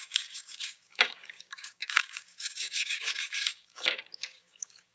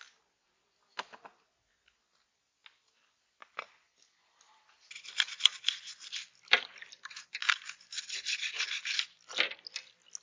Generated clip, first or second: first